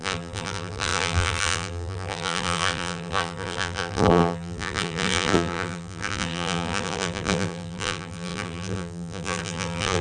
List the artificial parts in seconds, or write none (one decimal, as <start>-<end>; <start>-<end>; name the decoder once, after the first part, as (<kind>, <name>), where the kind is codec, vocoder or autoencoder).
0.0-10.0 (vocoder, BigVGAN v2)